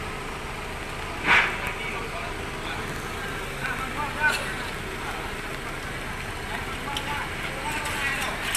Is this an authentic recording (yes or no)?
yes